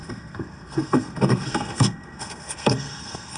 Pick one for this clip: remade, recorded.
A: remade